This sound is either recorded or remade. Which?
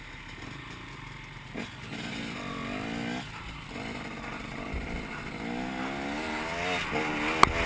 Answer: recorded